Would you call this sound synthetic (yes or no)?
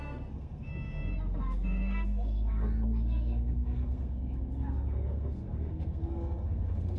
yes